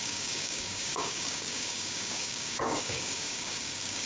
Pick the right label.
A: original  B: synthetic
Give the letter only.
B